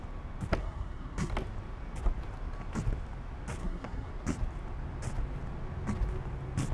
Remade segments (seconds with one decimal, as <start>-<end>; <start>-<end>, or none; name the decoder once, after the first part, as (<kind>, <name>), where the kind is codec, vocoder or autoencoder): 0.6-1.3 (codec, SNAC); 3.6-4.1